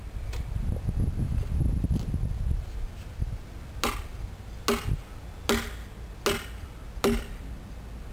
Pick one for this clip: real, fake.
real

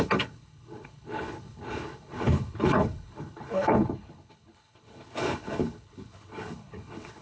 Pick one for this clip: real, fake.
fake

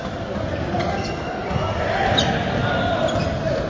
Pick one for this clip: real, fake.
real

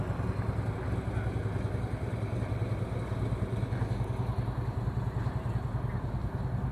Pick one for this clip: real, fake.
real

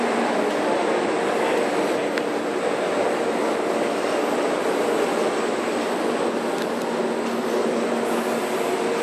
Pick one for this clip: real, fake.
real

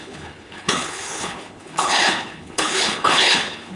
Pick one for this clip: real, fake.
fake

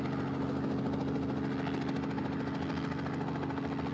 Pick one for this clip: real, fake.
real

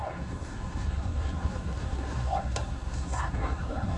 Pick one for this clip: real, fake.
fake